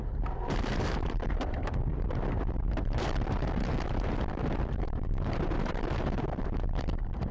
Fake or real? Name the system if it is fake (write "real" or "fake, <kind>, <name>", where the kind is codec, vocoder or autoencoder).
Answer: fake, vocoder, BigVGAN v2